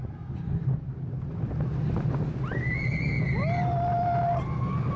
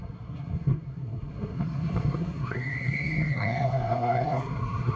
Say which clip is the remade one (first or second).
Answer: second